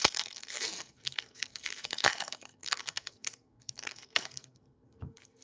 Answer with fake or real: fake